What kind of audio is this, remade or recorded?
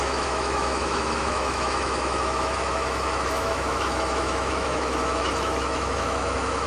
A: remade